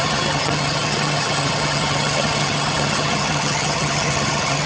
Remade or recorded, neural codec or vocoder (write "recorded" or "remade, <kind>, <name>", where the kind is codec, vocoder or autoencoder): remade, vocoder, HiFi-GAN